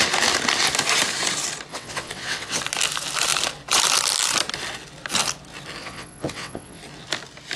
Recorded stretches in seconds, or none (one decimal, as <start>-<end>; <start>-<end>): 0.0-1.7; 2.6-5.8; 6.8-7.6